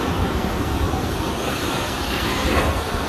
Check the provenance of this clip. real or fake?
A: fake